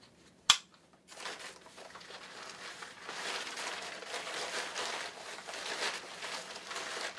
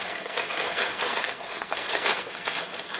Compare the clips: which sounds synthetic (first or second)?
second